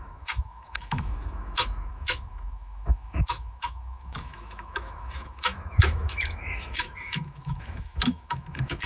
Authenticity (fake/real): fake